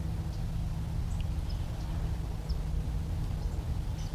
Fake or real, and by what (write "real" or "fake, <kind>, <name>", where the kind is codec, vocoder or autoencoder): real